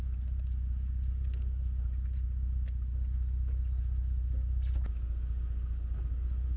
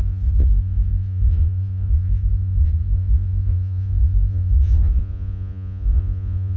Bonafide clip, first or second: first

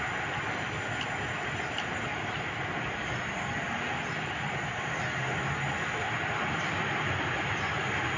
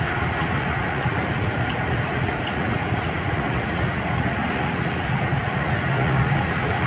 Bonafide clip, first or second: first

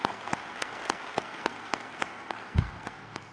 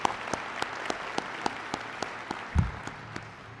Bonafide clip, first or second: second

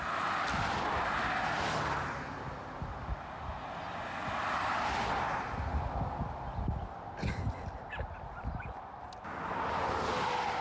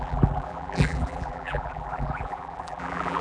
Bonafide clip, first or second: first